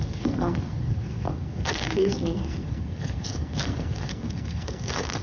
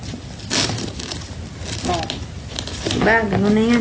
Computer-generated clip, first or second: first